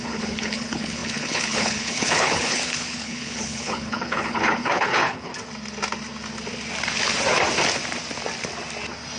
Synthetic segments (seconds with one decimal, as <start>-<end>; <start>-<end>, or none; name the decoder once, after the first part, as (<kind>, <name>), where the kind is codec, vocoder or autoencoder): 0.0-5.3 (codec, HILCodec)